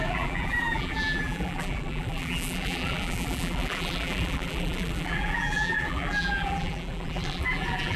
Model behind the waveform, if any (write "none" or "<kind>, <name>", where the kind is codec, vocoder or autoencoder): vocoder, BigVGAN v2